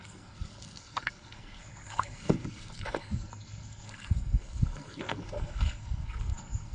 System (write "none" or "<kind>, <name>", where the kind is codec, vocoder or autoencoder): codec, SNAC